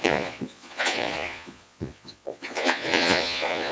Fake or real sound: fake